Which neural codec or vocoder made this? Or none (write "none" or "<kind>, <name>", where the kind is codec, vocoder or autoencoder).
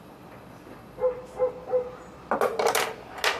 none